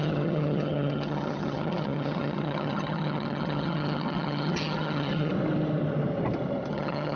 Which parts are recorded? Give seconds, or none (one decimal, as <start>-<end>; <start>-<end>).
5.3-6.7

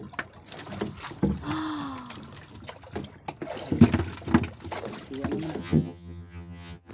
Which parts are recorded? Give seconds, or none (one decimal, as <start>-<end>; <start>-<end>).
0.0-5.6